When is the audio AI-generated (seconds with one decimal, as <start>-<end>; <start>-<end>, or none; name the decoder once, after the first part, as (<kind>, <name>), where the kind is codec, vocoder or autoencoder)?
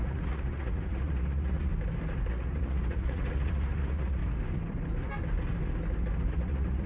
0.0-1.7 (vocoder, Vocos); 2.3-4.2; 6.3-6.9